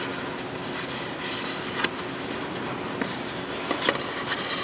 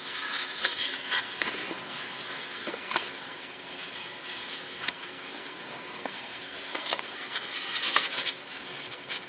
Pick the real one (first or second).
first